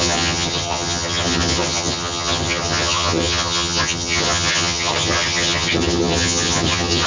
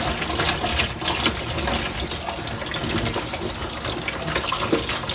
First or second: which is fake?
first